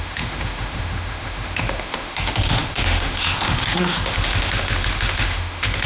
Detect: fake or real fake